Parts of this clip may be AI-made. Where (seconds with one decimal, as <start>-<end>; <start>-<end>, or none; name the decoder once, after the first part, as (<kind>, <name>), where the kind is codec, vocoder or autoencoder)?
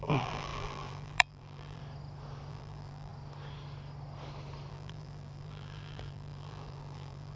0.0-1.8 (vocoder, BigVGAN v2); 2.5-3.1; 4.7-7.4